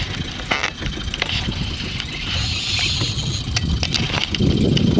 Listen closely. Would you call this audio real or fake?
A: real